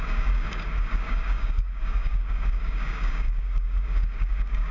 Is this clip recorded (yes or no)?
no